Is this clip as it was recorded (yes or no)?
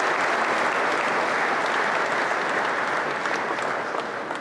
yes